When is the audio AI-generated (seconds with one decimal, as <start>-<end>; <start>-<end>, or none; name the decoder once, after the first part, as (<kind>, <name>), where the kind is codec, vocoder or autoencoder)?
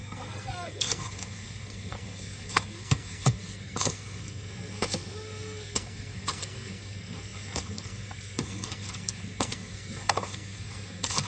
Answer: 0.0-11.3 (codec, SNAC)